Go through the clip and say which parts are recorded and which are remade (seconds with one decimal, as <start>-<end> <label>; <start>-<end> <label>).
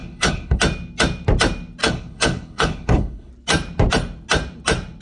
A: 0.0-0.6 remade; 0.6-1.8 recorded; 1.8-3.3 remade; 3.3-5.0 recorded